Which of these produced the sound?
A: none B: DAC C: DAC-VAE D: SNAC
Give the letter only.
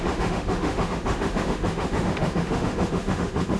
C